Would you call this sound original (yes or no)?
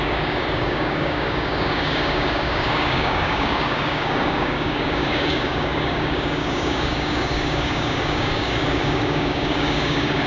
no